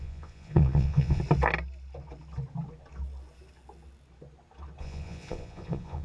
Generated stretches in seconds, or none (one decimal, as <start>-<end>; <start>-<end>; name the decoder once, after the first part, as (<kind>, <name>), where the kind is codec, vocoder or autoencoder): 0.0-1.2 (vocoder, Vocos); 4.8-6.0